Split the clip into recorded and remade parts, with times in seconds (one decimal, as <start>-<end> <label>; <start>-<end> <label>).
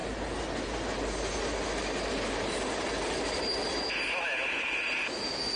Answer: 0.0-5.6 recorded